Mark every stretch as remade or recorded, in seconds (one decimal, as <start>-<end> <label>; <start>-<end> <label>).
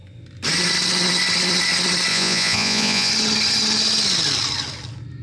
0.0-2.1 recorded; 2.1-3.1 remade; 3.1-5.2 recorded